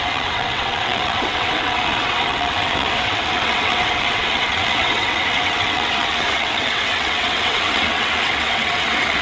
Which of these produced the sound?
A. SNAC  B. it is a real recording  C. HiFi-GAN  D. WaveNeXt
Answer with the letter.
D